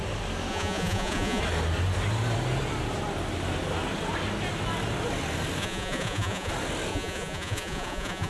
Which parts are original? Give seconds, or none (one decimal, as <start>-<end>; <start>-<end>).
0.0-0.5; 1.4-5.6; 6.5-6.9